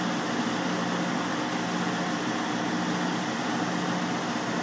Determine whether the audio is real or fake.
real